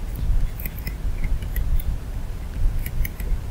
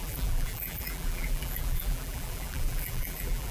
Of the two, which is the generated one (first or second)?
second